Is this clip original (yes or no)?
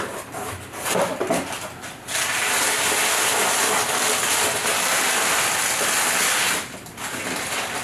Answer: yes